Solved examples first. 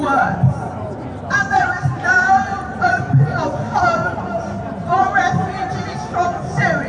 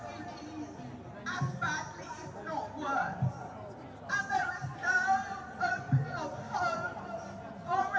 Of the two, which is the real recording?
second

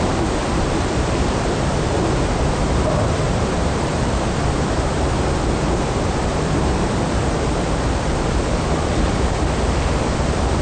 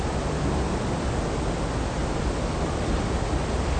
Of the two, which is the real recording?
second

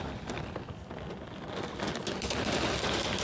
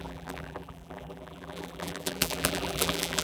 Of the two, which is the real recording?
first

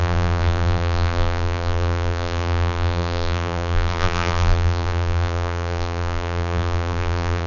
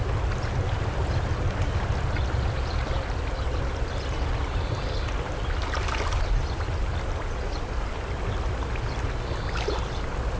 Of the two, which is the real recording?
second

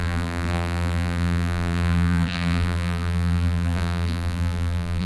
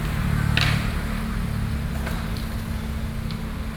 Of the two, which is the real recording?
second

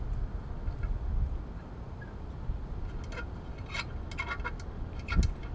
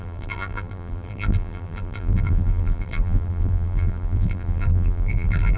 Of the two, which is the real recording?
first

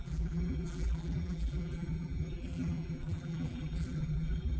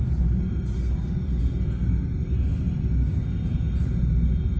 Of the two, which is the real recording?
second